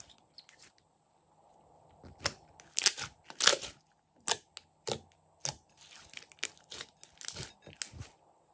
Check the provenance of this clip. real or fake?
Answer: real